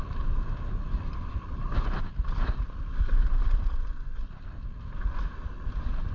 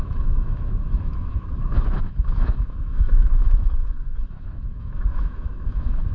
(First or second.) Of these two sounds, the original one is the first